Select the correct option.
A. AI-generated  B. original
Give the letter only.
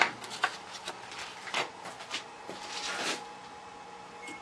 B